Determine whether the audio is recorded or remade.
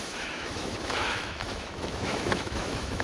remade